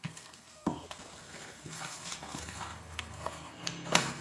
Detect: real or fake fake